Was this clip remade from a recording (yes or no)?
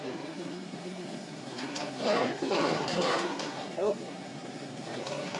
yes